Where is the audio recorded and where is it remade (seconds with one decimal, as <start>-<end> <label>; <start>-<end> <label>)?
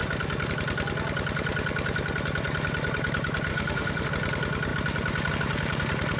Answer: 0.0-3.5 recorded; 3.5-4.1 remade; 4.1-6.2 recorded